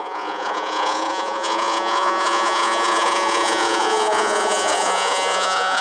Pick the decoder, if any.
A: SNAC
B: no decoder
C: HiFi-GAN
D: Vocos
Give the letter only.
D